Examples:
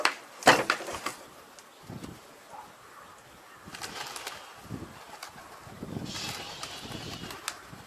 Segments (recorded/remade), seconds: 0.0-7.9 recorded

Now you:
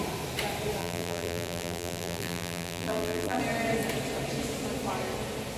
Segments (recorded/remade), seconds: 0.0-0.8 recorded; 0.8-3.4 remade; 3.4-5.6 recorded

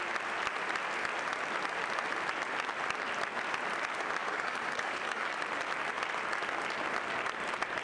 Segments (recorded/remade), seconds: 0.0-4.2 recorded; 4.2-5.3 remade; 5.3-7.8 recorded

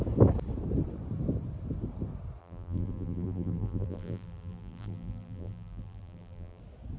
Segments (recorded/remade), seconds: 0.0-2.4 recorded; 2.4-6.6 remade; 6.6-7.0 recorded

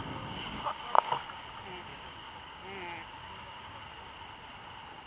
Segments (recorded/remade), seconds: 0.0-1.3 remade; 1.3-1.9 recorded; 1.9-2.6 remade; 2.6-3.0 recorded; 3.0-3.8 remade; 3.8-5.1 recorded

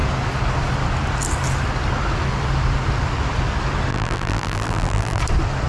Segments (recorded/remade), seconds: 0.0-3.9 recorded; 3.9-5.2 remade; 5.2-5.7 recorded